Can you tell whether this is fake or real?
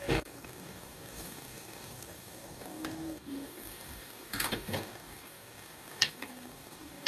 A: fake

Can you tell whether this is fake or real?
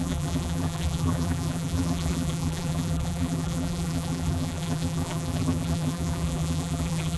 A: fake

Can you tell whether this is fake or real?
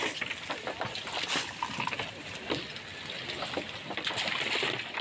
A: real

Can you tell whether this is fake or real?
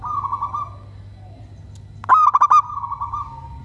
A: real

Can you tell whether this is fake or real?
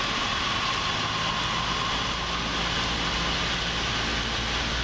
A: real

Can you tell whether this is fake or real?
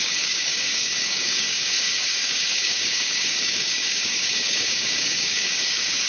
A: fake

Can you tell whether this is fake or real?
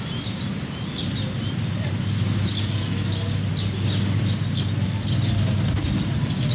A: real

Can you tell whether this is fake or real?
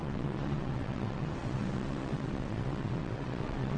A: fake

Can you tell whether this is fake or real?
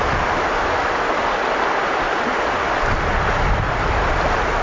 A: real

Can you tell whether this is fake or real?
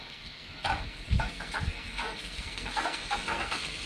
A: fake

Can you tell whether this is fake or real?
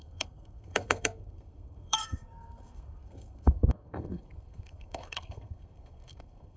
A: fake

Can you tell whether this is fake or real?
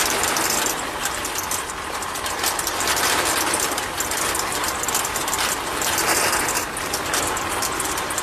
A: real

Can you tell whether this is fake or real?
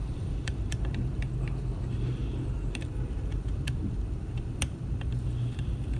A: fake